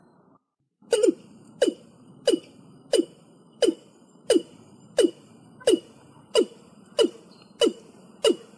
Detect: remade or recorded remade